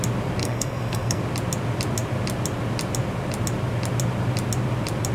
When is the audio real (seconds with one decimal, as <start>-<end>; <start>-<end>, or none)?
0.0-0.4; 1.2-5.1